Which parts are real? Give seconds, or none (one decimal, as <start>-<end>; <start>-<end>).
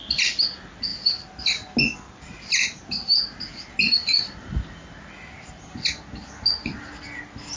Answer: 0.0-7.6